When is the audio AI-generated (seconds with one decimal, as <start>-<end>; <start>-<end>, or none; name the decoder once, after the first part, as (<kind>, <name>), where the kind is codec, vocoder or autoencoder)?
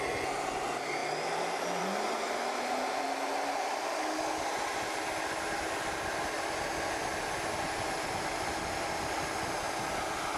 none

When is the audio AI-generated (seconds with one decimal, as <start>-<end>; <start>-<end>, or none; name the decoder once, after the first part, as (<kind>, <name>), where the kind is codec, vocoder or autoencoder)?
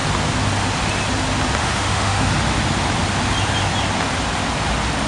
1.6-2.3 (autoencoder, DAC-VAE)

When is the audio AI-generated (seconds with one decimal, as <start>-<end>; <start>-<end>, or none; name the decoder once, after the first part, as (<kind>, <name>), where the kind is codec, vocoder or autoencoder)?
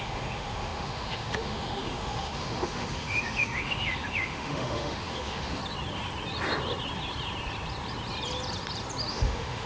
0.0-5.6 (autoencoder, DAC-VAE); 9.1-9.7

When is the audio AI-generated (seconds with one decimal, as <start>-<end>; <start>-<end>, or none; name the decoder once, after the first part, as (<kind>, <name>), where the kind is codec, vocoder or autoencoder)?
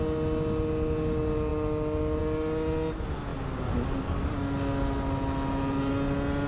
none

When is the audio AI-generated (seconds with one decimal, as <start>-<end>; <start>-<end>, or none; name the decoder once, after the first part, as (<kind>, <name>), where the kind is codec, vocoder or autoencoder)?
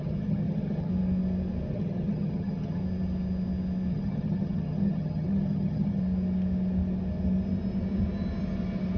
0.0-0.9 (vocoder, HiFi-GAN); 1.7-2.8; 3.9-6.0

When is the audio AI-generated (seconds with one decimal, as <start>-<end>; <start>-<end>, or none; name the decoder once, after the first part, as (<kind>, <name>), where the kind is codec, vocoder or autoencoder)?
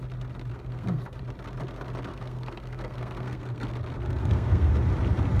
0.5-1.2 (codec, SNAC); 2.1-3.7; 4.2-4.7